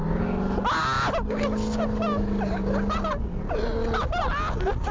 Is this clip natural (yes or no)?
yes